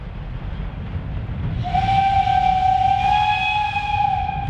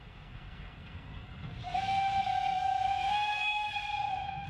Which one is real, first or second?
first